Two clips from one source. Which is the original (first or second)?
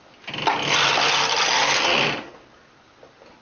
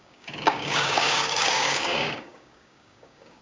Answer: first